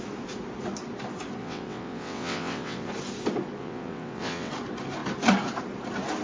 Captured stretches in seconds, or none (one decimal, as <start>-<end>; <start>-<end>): 0.0-1.4; 2.9-3.6; 4.5-6.2